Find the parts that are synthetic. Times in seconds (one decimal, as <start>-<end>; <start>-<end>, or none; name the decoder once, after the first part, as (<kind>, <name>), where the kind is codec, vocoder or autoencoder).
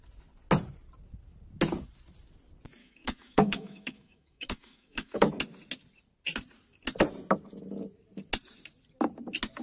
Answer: 2.8-5.3 (autoencoder, DAC-VAE)